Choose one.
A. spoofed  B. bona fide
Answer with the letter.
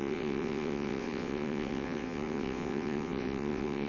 A